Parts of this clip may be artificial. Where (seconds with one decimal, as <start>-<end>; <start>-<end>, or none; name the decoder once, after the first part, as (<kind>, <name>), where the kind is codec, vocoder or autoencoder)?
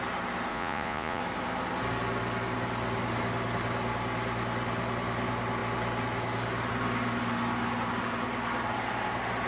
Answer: 0.5-1.2 (vocoder, Vocos)